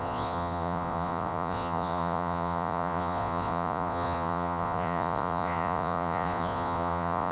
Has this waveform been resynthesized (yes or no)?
yes